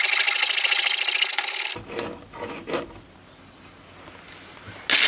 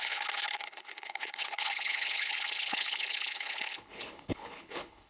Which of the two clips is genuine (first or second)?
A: first